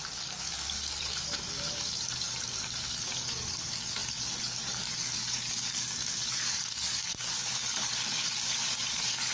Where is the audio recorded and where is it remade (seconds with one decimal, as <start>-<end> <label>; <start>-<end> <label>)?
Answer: 0.0-9.3 remade